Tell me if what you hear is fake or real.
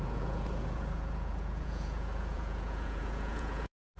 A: fake